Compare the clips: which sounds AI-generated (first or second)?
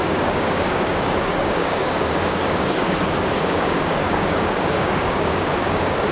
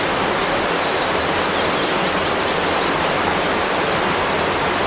first